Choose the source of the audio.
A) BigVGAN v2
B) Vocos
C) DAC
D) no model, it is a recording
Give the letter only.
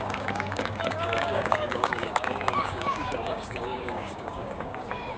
C